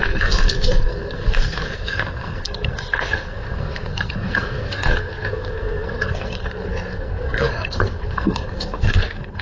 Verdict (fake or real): fake